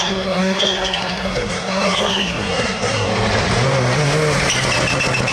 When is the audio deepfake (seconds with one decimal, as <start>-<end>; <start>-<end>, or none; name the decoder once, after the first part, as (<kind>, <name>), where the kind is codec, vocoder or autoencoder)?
0.0-3.1 (codec, SNAC)